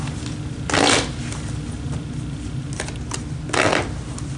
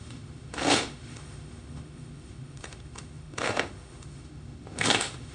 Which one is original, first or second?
first